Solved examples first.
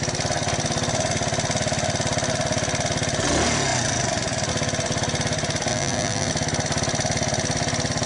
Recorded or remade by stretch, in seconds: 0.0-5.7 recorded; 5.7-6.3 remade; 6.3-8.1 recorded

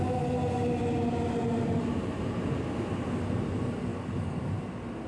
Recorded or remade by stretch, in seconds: 0.0-3.9 recorded; 3.9-4.5 remade; 4.5-5.1 recorded

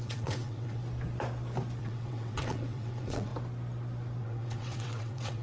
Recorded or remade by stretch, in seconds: 0.0-0.8 remade; 0.8-1.8 recorded; 1.8-3.3 remade; 3.3-4.2 recorded; 4.2-5.4 remade

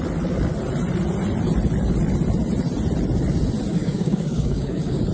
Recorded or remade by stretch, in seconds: 0.0-3.7 recorded; 3.7-5.1 remade

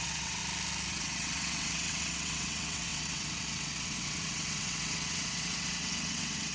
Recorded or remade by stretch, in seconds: 0.0-0.4 remade; 0.4-0.9 recorded; 0.9-6.5 remade

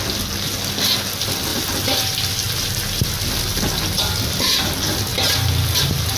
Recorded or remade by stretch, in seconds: 0.0-1.5 recorded; 1.5-2.2 remade; 2.2-3.5 recorded; 3.5-4.6 remade; 4.6-6.2 recorded

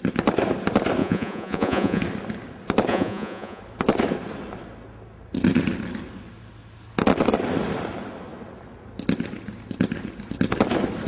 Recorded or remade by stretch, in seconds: 0.0-1.0 recorded; 1.0-2.0 remade; 2.0-2.9 recorded; 2.9-3.6 remade; 3.6-11.1 recorded

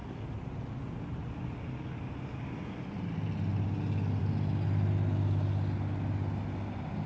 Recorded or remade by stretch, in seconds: 0.0-7.1 recorded